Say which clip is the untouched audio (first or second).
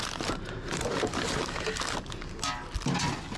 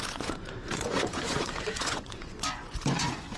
first